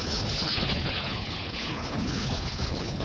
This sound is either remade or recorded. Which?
remade